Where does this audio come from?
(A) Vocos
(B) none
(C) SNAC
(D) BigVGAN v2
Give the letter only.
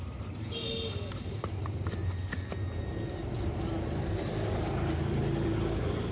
B